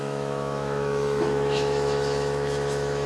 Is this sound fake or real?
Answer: fake